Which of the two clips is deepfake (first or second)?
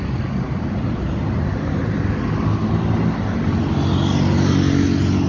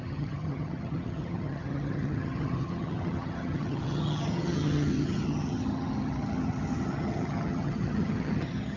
second